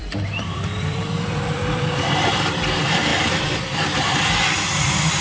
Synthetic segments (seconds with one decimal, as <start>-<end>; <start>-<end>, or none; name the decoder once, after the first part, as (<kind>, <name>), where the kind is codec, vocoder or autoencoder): 0.0-2.3 (vocoder, BigVGAN v2); 3.1-4.4